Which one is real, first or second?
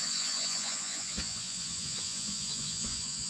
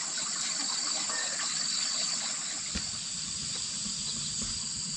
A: second